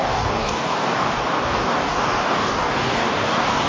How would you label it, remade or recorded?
remade